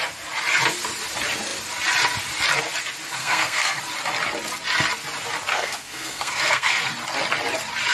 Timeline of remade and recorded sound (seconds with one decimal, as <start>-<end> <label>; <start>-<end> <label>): 0.0-3.2 recorded; 3.2-3.8 remade; 3.8-5.5 recorded; 5.5-6.9 remade; 6.9-7.9 recorded

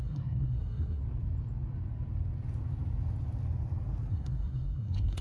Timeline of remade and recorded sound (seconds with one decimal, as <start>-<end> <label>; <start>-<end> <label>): 0.0-1.0 remade; 1.0-4.1 recorded; 4.1-5.2 remade

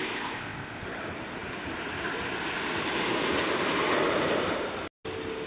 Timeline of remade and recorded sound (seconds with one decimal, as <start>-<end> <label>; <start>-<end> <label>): 0.0-0.8 remade; 0.8-5.5 recorded

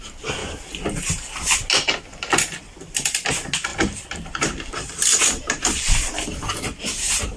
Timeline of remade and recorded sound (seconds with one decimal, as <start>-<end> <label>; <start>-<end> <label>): 0.0-3.7 recorded; 3.7-4.7 remade; 4.7-7.4 recorded

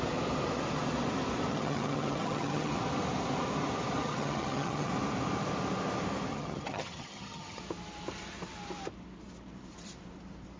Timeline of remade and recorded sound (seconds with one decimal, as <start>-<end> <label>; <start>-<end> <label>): 0.0-1.5 recorded; 1.5-2.8 remade; 2.8-4.0 recorded; 4.0-4.9 remade; 4.9-6.3 recorded; 6.3-7.6 remade; 7.6-10.6 recorded

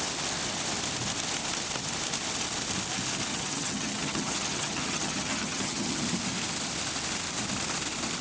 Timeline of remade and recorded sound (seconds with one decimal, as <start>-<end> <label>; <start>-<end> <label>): 0.0-3.3 recorded; 3.3-6.0 remade; 6.0-8.2 recorded

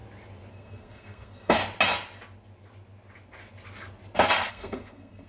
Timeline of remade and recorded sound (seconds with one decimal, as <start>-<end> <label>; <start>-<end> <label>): 0.0-0.5 recorded; 0.5-1.6 remade; 1.6-4.5 recorded; 4.5-5.3 remade